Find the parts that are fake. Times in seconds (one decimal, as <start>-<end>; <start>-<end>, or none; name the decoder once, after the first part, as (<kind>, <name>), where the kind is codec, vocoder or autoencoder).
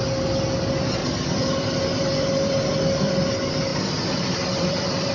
1.0-2.5 (vocoder, BigVGAN v2); 3.7-5.1